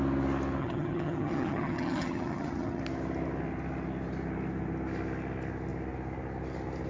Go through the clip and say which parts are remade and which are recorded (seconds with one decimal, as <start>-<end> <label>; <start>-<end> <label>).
0.0-0.6 recorded; 0.6-2.8 remade; 2.8-6.9 recorded